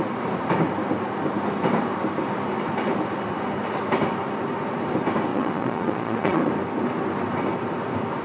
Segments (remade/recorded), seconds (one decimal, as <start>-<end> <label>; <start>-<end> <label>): 0.0-5.3 recorded; 5.3-6.5 remade; 6.5-8.2 recorded